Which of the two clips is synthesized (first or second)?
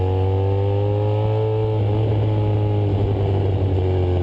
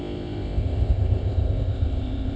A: second